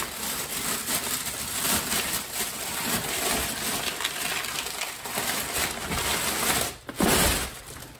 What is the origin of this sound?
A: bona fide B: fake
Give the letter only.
A